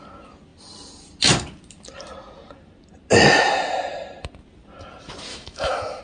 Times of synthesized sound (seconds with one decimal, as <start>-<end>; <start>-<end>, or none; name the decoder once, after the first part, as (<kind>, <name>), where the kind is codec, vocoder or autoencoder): 5.3-6.0 (autoencoder, DAC-VAE)